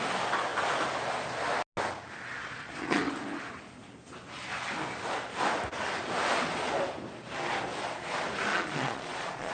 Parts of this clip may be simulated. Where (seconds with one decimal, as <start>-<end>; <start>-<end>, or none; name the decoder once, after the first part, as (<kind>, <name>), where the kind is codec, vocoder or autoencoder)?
2.3-3.1 (vocoder, Vocos); 8.5-9.5